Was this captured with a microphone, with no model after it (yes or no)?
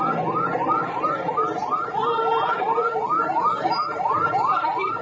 yes